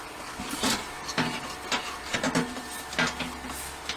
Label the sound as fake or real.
real